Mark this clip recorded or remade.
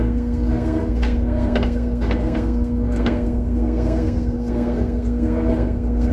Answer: remade